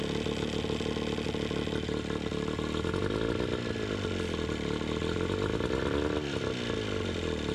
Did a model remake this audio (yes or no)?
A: no